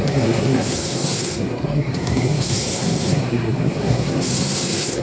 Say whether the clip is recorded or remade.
remade